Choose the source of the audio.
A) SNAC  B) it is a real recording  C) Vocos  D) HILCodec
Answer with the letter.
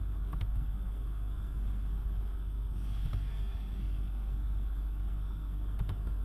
A